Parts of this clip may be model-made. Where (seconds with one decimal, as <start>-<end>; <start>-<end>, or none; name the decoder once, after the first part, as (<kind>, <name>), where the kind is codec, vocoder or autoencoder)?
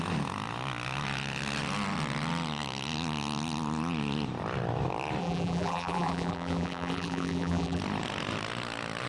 5.2-7.8 (vocoder, BigVGAN v2)